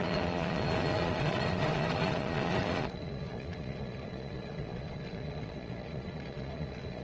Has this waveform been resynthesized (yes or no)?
yes